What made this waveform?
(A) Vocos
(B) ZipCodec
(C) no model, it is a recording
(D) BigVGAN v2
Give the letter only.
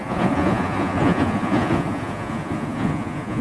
A